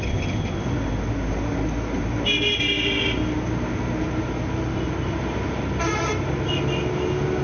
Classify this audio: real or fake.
real